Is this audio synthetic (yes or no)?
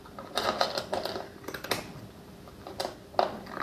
no